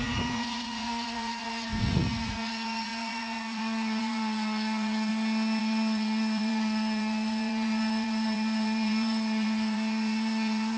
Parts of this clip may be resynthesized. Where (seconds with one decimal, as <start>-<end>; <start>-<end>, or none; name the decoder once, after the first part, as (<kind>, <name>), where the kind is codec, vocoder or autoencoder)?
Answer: 0.0-5.1 (vocoder, Vocos); 5.6-10.8